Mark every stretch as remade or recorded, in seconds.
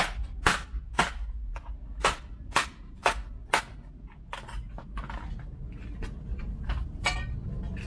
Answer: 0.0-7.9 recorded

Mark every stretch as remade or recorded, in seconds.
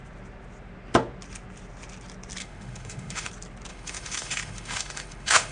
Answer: 0.0-2.4 recorded; 2.4-3.3 remade; 3.3-3.7 recorded; 3.7-5.5 remade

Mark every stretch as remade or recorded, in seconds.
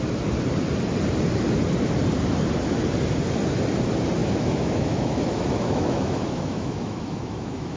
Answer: 0.0-4.2 recorded; 4.2-7.8 remade